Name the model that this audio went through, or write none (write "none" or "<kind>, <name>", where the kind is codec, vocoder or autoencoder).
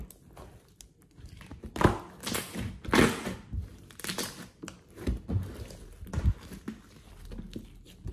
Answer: none